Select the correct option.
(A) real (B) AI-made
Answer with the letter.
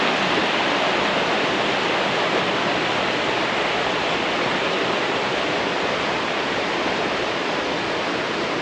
A